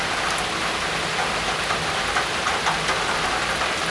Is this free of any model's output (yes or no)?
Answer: yes